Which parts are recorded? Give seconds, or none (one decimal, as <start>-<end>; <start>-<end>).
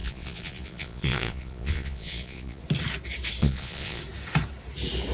2.6-3.4; 4.0-5.1